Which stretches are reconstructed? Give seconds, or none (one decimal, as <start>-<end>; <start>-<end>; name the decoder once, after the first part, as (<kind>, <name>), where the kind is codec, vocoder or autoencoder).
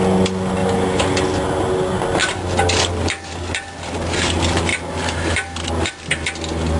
0.6-1.8 (vocoder, BigVGAN v2); 2.2-3.3; 4.7-5.7